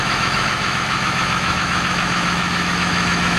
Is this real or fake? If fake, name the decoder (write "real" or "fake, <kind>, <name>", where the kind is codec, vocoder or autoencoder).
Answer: fake, autoencoder, DAC-VAE